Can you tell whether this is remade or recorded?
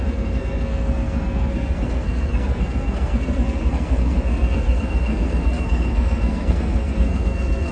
remade